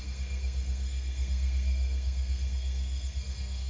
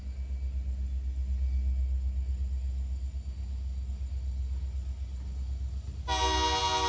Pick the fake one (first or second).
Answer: first